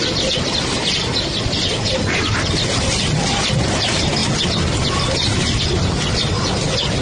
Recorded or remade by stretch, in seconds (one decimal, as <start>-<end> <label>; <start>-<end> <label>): 0.0-7.0 recorded